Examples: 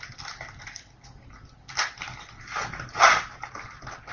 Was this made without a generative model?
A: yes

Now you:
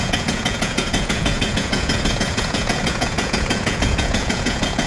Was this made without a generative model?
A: no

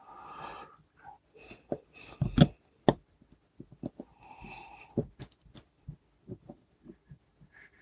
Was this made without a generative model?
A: yes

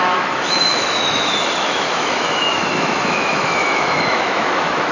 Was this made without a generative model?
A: no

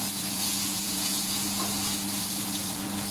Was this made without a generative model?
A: no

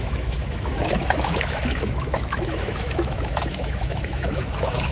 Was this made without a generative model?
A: no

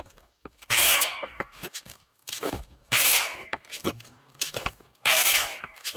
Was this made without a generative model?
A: no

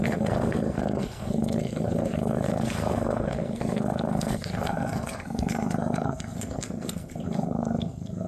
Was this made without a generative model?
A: no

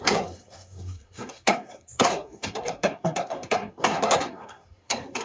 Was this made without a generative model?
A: no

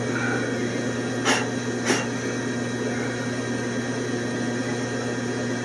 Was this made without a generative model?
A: yes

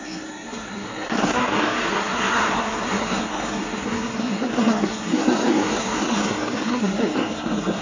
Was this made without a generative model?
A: no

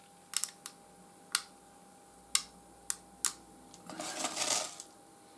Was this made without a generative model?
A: yes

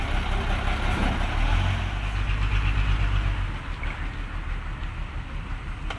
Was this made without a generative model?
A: yes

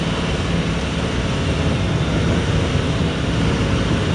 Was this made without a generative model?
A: yes